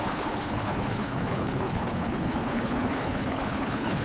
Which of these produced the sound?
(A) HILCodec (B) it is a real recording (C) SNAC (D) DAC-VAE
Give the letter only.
A